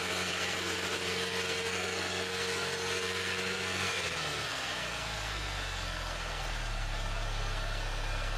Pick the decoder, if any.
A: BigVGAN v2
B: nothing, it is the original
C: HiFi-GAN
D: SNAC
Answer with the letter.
D